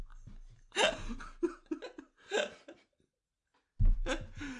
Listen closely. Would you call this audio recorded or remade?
recorded